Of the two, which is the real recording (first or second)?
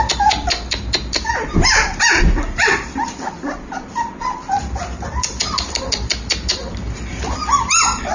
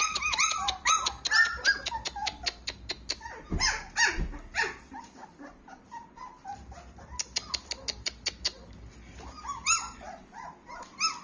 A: second